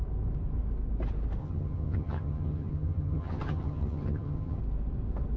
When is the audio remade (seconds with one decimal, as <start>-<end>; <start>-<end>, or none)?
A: 1.4-4.6